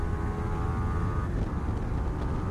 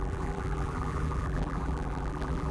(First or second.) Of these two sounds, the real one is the first